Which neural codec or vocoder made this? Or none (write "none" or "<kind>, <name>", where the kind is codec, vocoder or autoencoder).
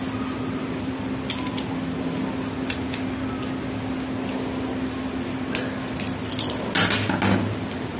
none